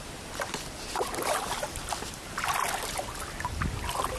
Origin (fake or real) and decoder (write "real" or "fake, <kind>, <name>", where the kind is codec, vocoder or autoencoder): real